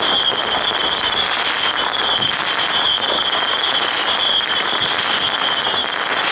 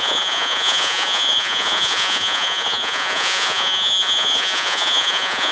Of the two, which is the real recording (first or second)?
first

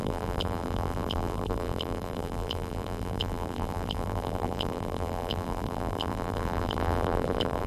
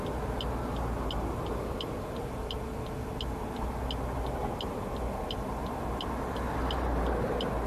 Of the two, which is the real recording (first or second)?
second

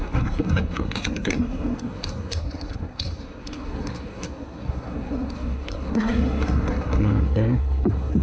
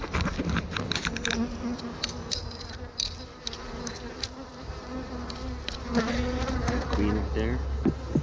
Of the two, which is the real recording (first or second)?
second